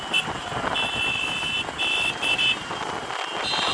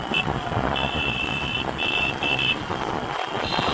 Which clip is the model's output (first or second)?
second